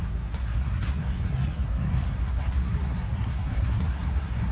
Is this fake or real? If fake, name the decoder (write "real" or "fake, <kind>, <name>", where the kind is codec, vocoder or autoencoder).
fake, codec, SNAC